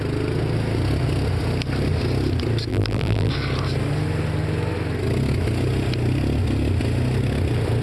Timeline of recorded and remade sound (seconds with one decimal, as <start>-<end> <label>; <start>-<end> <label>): 0.0-2.7 recorded; 2.7-3.3 remade; 3.3-7.8 recorded